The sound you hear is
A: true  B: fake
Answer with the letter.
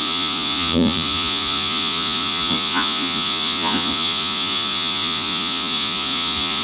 B